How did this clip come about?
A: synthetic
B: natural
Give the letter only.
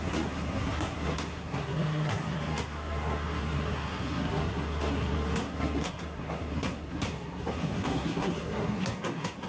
A